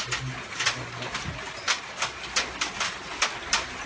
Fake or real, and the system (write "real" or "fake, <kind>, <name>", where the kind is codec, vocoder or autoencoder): real